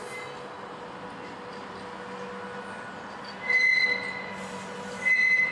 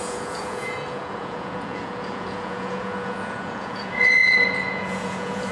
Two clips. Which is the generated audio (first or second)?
second